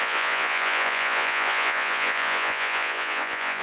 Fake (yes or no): yes